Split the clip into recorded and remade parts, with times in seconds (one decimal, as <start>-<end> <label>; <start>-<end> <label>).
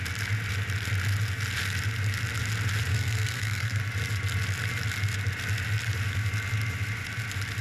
0.0-2.9 recorded; 2.9-3.8 remade; 3.8-7.6 recorded